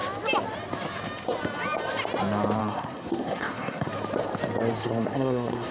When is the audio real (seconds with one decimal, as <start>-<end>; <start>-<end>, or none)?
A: 0.0-2.6; 3.9-4.8